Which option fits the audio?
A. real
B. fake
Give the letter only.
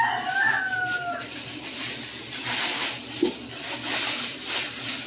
A